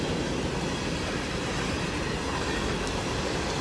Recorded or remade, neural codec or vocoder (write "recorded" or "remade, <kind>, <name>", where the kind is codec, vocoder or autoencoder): recorded